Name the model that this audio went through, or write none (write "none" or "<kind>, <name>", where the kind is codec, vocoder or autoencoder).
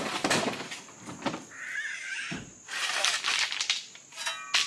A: none